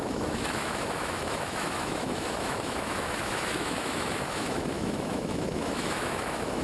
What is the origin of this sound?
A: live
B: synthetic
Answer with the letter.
B